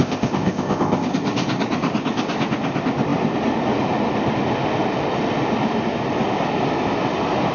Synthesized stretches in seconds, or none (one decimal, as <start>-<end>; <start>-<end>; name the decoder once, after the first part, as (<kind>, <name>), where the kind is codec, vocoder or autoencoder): 0.0-1.1 (codec, ZipCodec)